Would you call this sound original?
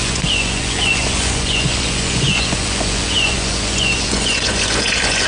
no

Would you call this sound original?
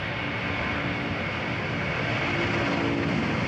yes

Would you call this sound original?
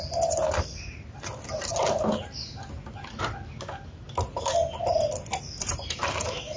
yes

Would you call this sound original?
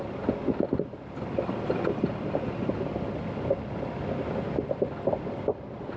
yes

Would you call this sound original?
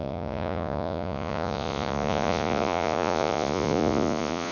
no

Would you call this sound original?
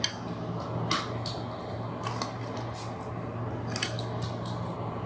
yes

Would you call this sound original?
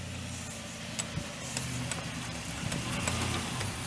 yes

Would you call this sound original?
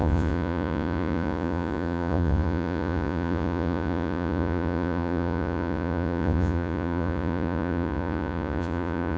no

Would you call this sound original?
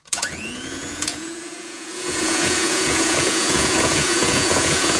no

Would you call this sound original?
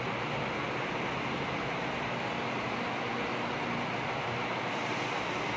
yes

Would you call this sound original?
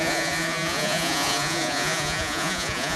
no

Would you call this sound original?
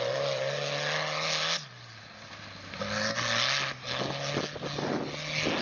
yes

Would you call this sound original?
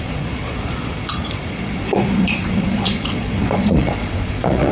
no